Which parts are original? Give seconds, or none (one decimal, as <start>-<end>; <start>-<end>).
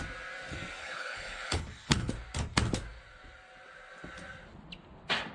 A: 0.0-0.8; 2.1-5.3